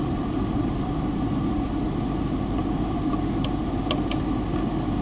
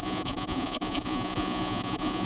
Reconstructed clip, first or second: second